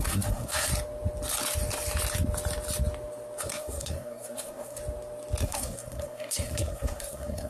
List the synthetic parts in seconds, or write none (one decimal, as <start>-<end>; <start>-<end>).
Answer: 0.0-0.7; 3.4-4.8; 5.4-7.5

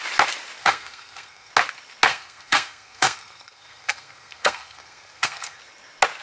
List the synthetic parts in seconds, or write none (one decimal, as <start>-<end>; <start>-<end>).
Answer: 0.6-1.5; 2.1-5.6